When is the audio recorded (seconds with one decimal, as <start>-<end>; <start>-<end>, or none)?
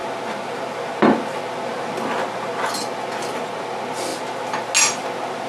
0.0-5.5